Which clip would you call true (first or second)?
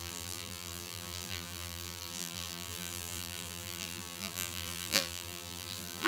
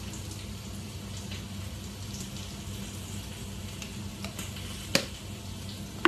second